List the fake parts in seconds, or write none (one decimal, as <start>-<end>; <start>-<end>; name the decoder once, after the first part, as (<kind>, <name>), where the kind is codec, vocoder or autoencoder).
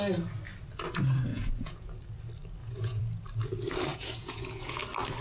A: 1.3-2.0 (vocoder, Vocos); 2.6-3.2; 3.9-4.8